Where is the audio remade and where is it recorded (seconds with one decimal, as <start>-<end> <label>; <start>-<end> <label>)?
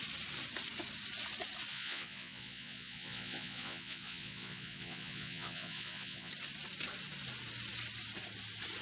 0.0-1.7 recorded; 1.7-6.3 remade; 6.3-8.8 recorded